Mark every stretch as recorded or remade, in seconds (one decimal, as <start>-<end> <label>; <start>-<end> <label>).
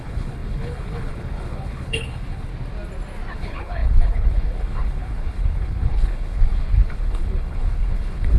0.0-2.5 remade; 2.5-3.3 recorded; 3.3-8.4 remade